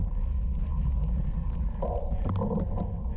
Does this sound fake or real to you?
real